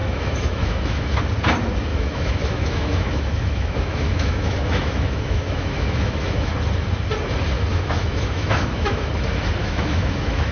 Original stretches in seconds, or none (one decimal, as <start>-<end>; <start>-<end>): 1.2-1.9; 6.5-7.7; 9.1-9.6